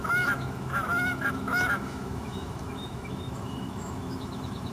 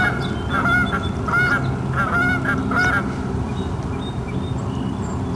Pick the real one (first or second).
second